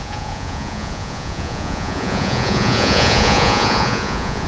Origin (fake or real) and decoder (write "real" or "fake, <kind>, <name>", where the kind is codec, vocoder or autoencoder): fake, vocoder, Vocos